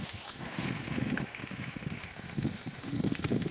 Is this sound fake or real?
fake